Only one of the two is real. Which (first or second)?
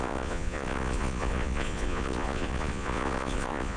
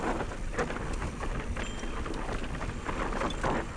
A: second